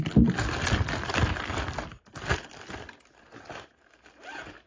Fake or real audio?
real